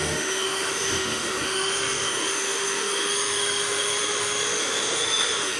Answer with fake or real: fake